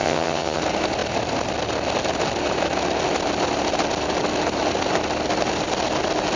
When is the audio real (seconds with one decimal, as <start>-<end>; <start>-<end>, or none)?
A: 0.6-6.4